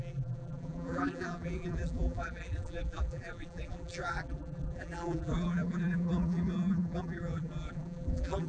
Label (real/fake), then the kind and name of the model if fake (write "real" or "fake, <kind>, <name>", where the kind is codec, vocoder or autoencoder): fake, vocoder, BigVGAN v2